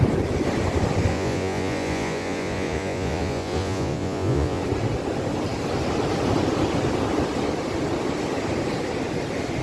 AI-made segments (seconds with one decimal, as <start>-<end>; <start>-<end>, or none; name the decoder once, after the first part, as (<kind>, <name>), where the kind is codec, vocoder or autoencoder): 1.1-4.6 (vocoder, Vocos)